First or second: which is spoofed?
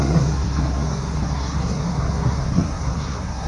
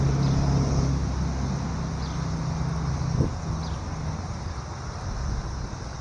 first